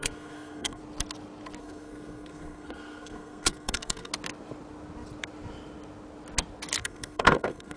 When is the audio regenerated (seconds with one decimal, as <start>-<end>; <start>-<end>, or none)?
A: 0.0-0.8; 1.6-4.1; 6.8-7.8